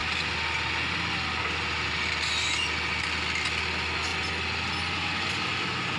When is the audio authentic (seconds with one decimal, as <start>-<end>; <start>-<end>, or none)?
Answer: 0.0-6.0